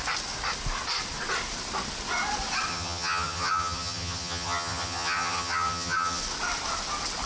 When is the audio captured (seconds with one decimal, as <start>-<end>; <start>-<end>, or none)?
0.0-2.7; 6.2-7.3